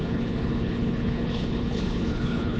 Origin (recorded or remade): remade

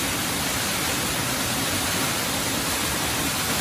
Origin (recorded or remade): recorded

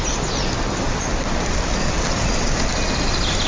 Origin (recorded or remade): recorded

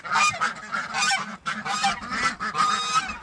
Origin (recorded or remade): recorded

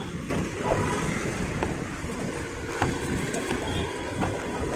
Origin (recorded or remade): recorded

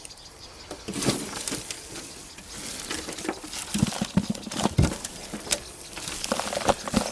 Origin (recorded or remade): recorded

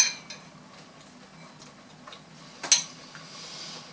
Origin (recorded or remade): recorded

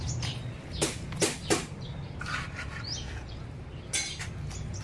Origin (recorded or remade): recorded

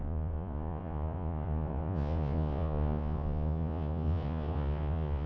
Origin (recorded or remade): remade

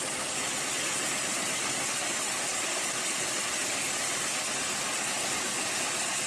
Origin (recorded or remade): recorded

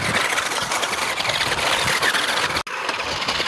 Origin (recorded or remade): recorded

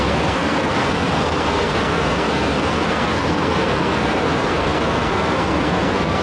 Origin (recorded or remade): remade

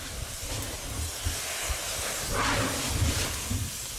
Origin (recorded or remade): recorded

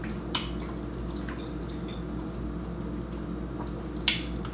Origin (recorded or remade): recorded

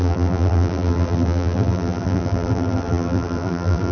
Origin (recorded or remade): remade